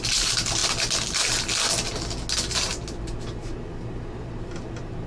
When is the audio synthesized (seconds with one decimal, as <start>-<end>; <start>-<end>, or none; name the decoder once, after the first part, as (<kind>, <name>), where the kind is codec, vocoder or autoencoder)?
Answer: none